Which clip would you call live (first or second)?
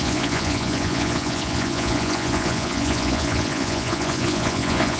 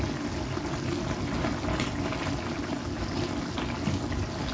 second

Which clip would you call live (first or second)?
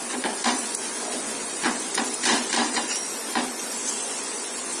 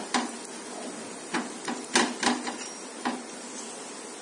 second